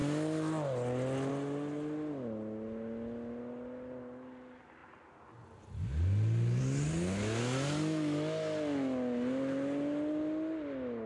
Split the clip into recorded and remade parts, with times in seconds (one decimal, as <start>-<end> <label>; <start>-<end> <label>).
0.0-11.1 recorded